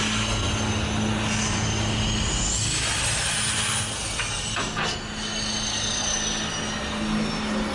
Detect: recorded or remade recorded